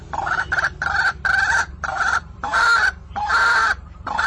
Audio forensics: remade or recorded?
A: remade